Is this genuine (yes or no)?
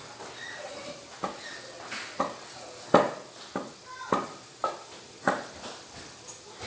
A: yes